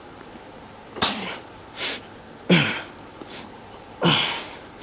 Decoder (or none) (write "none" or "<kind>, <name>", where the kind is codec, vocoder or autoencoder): vocoder, BigVGAN v2